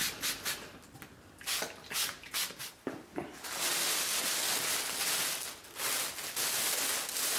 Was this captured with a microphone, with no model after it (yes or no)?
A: yes